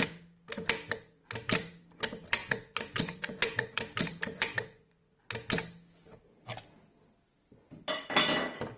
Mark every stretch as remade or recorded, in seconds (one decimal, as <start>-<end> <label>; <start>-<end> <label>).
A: 0.0-2.4 recorded; 2.4-3.8 remade; 3.8-4.3 recorded; 4.3-5.2 remade; 5.2-8.8 recorded